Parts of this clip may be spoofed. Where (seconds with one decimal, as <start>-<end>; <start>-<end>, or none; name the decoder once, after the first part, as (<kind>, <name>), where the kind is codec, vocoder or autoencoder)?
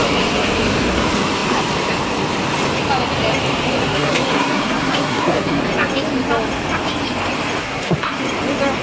3.8-5.6 (codec, SNAC); 7.6-8.2